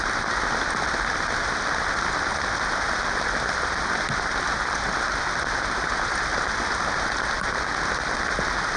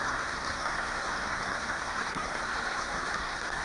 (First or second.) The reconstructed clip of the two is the second